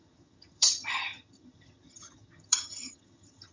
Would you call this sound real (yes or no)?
no